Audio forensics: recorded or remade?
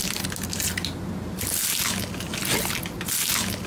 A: recorded